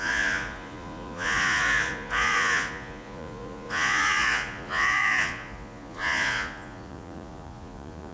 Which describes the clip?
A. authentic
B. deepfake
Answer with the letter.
B